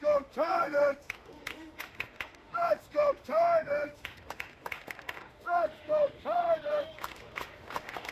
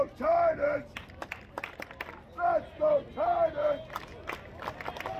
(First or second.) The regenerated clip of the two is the first